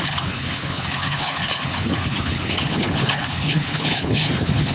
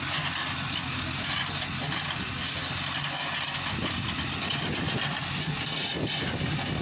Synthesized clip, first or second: first